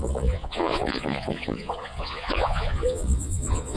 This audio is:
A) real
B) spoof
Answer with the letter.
B